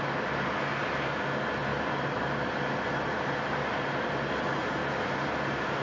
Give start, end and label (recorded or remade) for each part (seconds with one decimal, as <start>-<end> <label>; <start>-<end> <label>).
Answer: 0.0-5.8 recorded